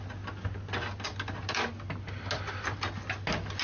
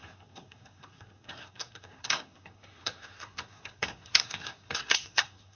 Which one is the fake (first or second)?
second